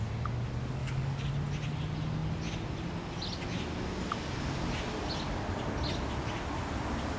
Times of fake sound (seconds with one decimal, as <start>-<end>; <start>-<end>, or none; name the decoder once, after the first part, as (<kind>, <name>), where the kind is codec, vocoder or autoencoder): 0.8-1.3 (codec, DAC)